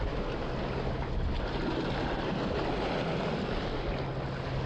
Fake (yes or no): no